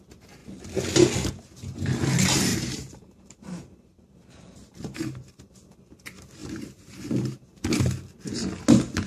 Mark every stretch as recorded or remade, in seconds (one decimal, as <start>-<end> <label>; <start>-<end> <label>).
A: 0.0-2.5 recorded; 2.5-5.4 remade; 5.4-6.4 recorded; 6.4-7.7 remade; 7.7-9.1 recorded